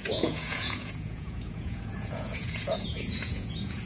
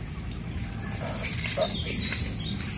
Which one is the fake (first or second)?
first